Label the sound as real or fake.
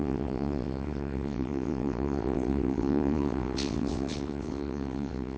fake